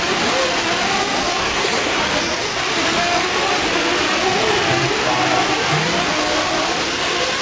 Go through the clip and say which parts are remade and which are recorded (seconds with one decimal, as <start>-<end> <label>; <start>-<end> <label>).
0.0-1.4 recorded; 1.4-2.0 remade; 2.0-7.4 recorded